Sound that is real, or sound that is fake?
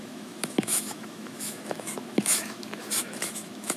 fake